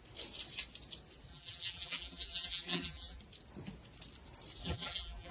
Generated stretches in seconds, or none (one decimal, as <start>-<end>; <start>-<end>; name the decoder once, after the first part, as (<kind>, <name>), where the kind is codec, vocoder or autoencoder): 1.3-3.2 (vocoder, BigVGAN v2); 4.6-5.3